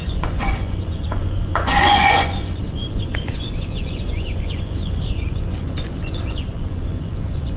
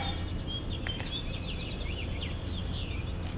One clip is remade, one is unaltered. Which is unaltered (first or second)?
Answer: second